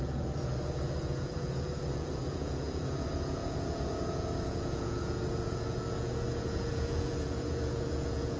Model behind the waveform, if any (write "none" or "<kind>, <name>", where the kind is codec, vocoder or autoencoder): vocoder, Vocos